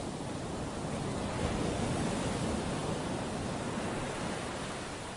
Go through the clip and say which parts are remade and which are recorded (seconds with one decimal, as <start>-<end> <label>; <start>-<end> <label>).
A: 0.0-5.2 recorded